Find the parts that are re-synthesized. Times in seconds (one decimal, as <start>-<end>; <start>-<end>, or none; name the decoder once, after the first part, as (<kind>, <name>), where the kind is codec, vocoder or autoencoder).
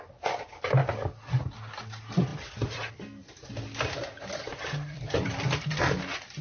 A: 2.3-2.9 (vocoder, BigVGAN v2); 4.5-5.8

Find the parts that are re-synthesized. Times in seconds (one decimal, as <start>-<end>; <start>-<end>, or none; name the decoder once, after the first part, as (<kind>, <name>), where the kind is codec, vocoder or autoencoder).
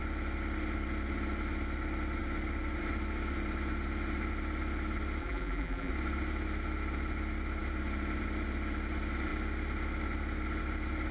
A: 5.2-5.9 (vocoder, BigVGAN v2)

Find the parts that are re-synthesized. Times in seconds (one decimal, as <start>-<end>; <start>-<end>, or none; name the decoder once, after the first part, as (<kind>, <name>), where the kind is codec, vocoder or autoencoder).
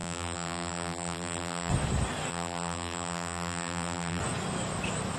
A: 0.0-1.7 (vocoder, BigVGAN v2); 2.3-4.2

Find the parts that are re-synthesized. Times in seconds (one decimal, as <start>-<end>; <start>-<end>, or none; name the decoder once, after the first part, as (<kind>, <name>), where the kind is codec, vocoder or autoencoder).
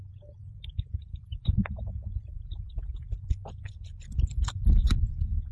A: 0.4-3.7 (vocoder, BigVGAN v2)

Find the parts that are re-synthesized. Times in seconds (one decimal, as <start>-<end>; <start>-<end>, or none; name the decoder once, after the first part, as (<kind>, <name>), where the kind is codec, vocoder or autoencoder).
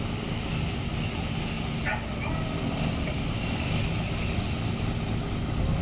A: none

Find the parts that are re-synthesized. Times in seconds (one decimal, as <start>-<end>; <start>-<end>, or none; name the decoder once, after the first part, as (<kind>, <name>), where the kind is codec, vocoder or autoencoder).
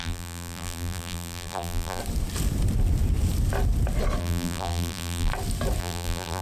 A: 0.0-2.0 (vocoder, BigVGAN v2); 4.2-5.3; 5.8-6.4